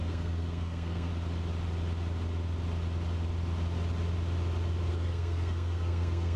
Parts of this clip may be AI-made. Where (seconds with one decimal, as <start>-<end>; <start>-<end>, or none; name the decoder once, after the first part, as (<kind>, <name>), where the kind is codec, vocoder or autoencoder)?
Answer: 0.0-1.1 (codec, SNAC); 4.9-6.4